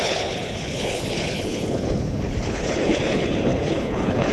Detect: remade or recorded remade